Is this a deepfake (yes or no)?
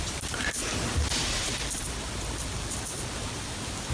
no